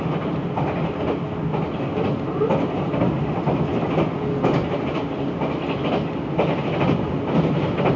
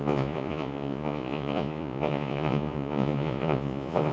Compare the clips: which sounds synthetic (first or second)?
second